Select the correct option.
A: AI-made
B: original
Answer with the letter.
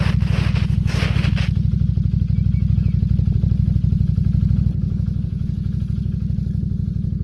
B